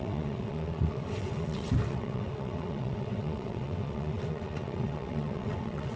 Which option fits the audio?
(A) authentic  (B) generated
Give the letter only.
B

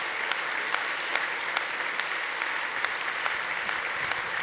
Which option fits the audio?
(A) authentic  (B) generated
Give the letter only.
A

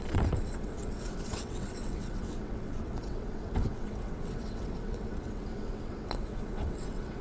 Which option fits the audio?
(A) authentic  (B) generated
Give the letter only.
B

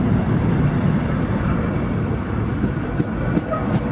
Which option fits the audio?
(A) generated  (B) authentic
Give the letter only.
B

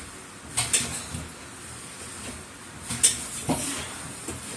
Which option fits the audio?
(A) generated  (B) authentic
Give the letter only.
B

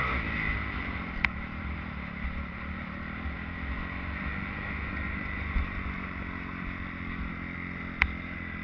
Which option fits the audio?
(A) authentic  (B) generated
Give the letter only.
A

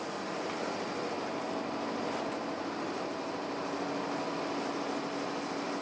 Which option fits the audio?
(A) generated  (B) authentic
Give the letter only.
B